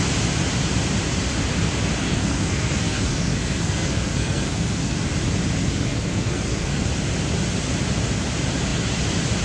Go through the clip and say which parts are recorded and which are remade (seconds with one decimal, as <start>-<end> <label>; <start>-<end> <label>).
0.0-2.0 recorded; 2.0-5.0 remade; 5.0-5.6 recorded; 5.6-6.8 remade; 6.8-9.4 recorded